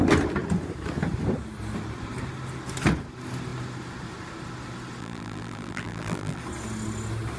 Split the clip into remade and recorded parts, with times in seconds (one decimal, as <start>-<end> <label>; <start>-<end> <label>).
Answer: 0.0-5.0 recorded; 5.0-6.4 remade; 6.4-7.4 recorded

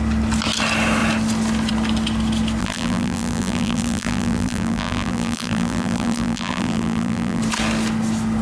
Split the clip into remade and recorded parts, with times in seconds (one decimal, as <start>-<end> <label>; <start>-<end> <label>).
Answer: 0.0-2.6 recorded; 2.6-7.4 remade; 7.4-8.4 recorded